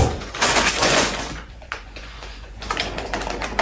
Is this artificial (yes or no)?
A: yes